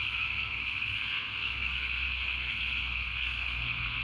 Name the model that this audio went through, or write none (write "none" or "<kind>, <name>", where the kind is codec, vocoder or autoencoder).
codec, SNAC